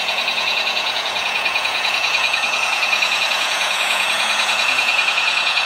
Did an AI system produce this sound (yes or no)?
yes